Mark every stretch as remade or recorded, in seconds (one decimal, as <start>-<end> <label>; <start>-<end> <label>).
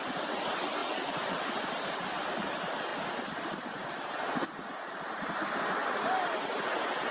0.0-0.8 remade; 0.8-1.5 recorded; 1.5-7.1 remade